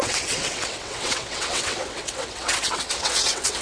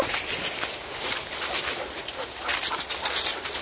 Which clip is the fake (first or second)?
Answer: first